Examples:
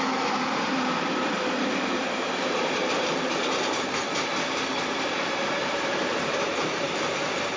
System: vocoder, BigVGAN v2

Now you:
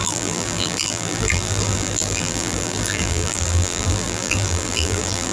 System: vocoder, BigVGAN v2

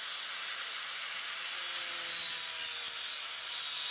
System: none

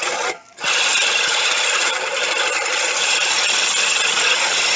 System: vocoder, BigVGAN v2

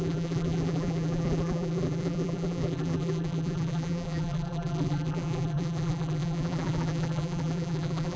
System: vocoder, BigVGAN v2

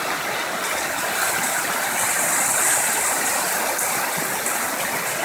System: none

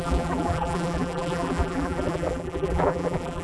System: vocoder, BigVGAN v2